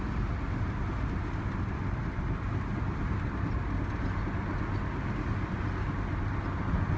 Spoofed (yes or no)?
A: no